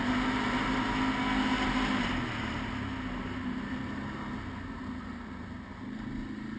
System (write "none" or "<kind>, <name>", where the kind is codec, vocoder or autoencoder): none